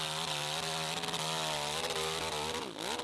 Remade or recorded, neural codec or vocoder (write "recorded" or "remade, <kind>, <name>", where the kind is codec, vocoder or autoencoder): recorded